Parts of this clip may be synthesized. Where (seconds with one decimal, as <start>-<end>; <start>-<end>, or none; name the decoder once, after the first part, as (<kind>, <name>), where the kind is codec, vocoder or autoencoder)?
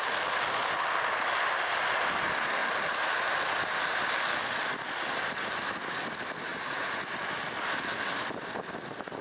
6.5-7.0 (vocoder, Vocos)